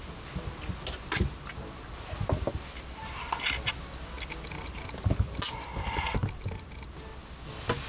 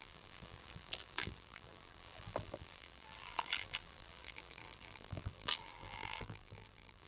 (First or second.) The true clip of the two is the first